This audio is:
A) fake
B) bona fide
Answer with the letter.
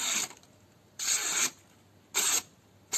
B